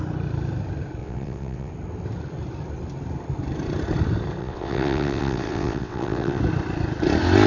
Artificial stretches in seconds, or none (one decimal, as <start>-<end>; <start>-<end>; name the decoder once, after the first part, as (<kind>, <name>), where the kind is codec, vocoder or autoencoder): 1.0-1.7 (vocoder, WaveNeXt); 4.4-6.4